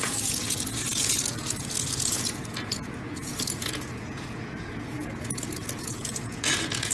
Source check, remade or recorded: remade